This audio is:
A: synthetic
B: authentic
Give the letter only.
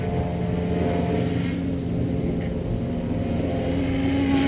B